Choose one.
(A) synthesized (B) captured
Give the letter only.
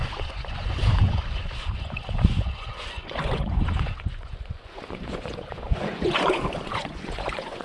A